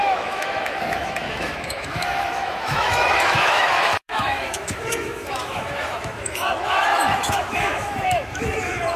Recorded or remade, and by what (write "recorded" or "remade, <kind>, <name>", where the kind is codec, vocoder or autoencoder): remade, autoencoder, DAC-VAE